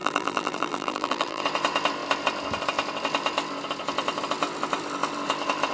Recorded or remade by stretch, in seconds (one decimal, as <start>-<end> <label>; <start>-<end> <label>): 0.0-1.4 remade; 1.4-5.7 recorded